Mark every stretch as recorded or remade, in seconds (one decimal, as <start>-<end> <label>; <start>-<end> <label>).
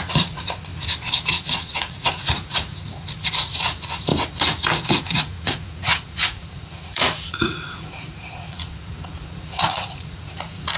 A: 0.0-0.7 remade; 0.7-1.3 recorded; 1.3-4.1 remade; 4.1-4.9 recorded; 4.9-10.8 remade